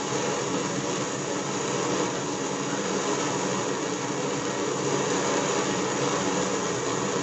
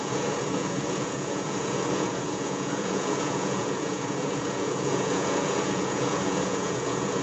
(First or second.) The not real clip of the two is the second